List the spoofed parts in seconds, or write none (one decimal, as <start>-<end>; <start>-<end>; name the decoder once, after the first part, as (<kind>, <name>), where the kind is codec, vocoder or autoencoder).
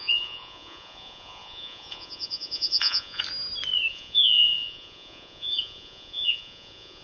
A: 0.0-3.2 (vocoder, Vocos); 3.9-7.0